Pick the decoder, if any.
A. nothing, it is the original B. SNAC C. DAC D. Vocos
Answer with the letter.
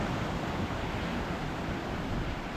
A